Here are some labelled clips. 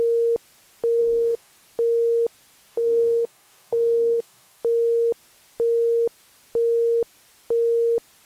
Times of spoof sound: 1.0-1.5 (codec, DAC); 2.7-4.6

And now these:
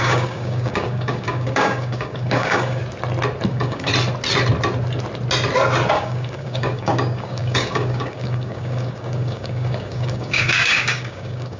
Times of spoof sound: 0.0-2.8 (codec, DAC); 3.5-3.9; 5.9-11.6

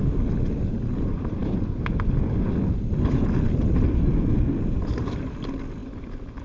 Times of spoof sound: none